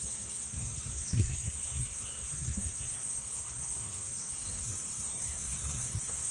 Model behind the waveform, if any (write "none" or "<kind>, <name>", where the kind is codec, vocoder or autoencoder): codec, SNAC